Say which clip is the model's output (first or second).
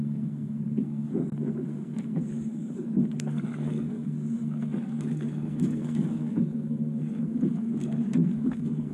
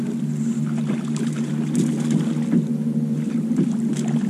first